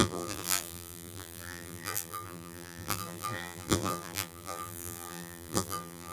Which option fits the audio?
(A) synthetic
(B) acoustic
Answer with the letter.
A